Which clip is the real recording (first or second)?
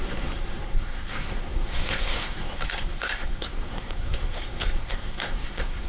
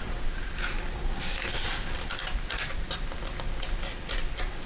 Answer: second